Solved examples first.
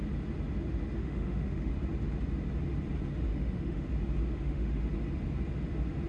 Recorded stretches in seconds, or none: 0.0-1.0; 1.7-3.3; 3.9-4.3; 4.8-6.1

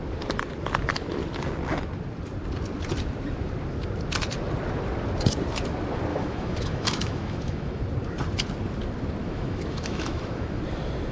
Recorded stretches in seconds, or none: 0.0-6.1; 7.8-9.2; 10.6-11.1